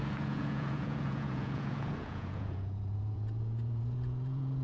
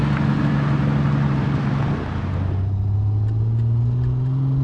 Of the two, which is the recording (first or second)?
second